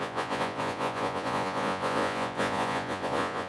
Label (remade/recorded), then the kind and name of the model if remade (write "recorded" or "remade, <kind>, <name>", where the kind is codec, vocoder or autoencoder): remade, vocoder, Vocos